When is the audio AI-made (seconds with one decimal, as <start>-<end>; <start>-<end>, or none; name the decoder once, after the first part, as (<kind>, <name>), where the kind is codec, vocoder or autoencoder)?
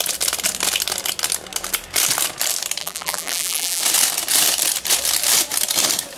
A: 2.8-3.8 (vocoder, BigVGAN v2)